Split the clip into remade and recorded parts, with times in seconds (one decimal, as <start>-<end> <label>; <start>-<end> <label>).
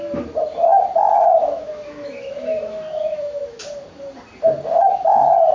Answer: 0.0-1.4 recorded; 1.4-3.6 remade; 3.6-5.5 recorded